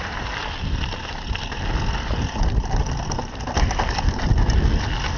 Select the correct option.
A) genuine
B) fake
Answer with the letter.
A